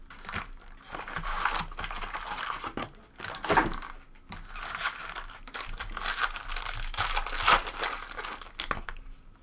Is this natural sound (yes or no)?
yes